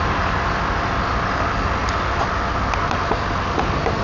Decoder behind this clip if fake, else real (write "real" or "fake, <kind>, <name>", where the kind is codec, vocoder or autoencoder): real